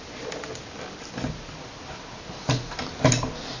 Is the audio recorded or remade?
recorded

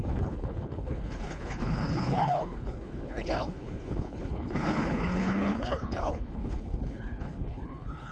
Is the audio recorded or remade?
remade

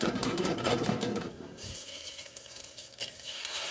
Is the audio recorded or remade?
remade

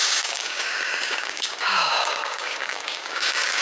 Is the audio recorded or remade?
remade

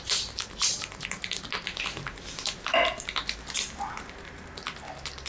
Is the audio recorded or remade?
recorded